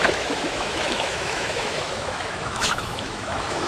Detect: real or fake fake